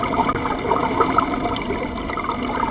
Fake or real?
real